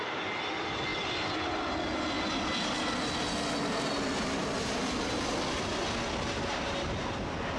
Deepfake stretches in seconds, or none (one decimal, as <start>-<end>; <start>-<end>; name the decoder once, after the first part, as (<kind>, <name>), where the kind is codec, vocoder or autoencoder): none